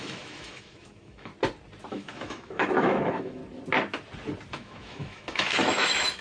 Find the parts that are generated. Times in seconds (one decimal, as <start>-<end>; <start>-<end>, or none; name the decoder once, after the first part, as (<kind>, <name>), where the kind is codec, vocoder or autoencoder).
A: 0.0-1.3 (autoencoder, DAC-VAE); 1.9-3.4; 4.5-6.2